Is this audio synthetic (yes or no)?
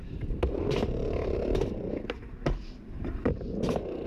no